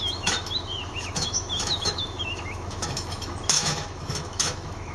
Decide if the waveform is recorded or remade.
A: remade